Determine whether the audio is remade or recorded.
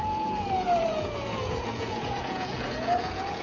remade